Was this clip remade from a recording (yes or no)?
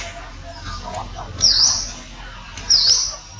no